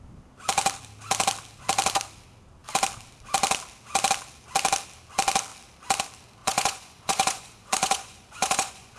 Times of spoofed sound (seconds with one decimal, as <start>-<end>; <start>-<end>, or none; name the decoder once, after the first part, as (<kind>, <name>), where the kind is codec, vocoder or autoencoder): 6.4-9.0 (vocoder, Vocos)